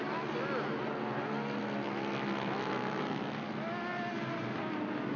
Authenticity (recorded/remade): recorded